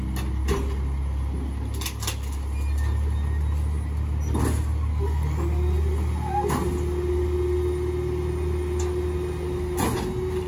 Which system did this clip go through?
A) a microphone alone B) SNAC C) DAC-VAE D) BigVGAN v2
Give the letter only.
A